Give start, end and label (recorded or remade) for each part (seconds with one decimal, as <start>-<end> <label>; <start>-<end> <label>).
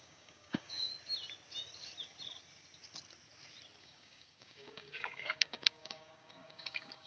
0.0-0.9 remade; 0.9-3.8 recorded; 3.8-7.1 remade